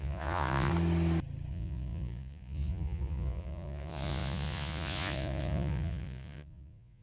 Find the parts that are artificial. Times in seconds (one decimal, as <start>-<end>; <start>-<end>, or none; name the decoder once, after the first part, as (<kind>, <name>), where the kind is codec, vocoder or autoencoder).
0.0-0.7 (vocoder, Vocos); 1.5-7.0

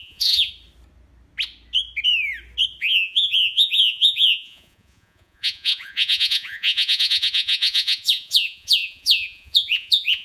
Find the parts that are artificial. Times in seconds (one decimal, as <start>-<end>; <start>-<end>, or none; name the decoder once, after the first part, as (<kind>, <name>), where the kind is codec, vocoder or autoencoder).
0.0-0.5 (vocoder, Vocos); 2.8-10.2

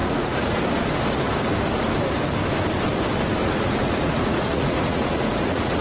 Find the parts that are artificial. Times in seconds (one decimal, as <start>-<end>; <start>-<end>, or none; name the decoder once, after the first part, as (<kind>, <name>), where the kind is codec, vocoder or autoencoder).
0.0-0.6 (vocoder, Vocos); 3.4-5.8